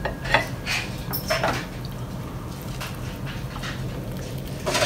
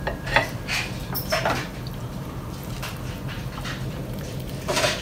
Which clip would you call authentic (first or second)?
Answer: first